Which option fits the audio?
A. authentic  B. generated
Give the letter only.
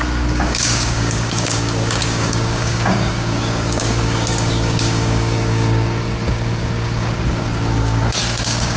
B